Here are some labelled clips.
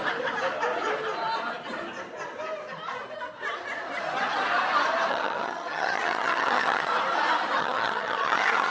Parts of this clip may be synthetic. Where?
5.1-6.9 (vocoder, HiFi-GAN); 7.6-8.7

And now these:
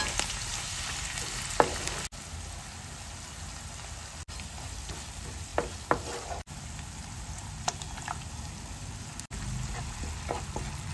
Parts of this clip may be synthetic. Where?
none

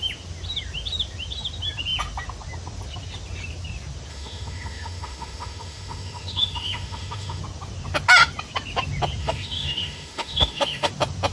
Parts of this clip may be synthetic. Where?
4.1-7.4 (autoencoder, DAC-VAE); 9.2-10.9

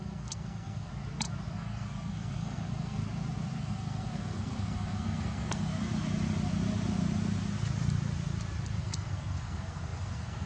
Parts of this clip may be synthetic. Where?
0.0-0.9 (codec, SNAC); 1.5-3.0; 3.6-5.7; 8.8-10.5

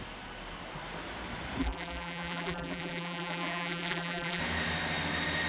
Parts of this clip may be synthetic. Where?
1.6-4.4 (vocoder, BigVGAN v2)

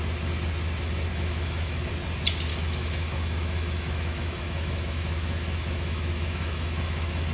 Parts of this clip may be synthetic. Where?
1.1-1.9 (autoencoder, DAC-VAE); 2.5-7.3

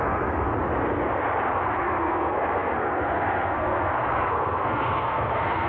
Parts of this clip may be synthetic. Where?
0.0-0.5 (codec, SNAC); 1.8-5.7

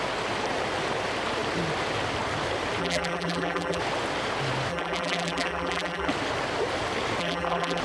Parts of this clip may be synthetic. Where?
2.8-3.8 (vocoder, BigVGAN v2); 4.7-6.1; 7.2-7.8